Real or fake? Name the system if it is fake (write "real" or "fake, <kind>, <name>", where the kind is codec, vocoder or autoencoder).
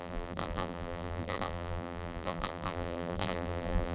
fake, vocoder, BigVGAN v2